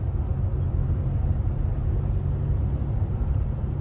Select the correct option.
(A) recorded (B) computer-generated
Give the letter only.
A